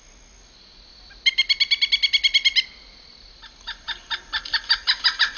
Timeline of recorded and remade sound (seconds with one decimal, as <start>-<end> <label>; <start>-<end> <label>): 0.0-5.4 recorded